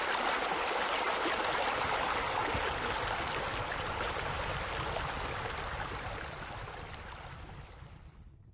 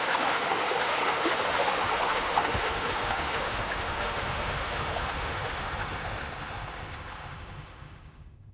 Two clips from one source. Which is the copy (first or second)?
second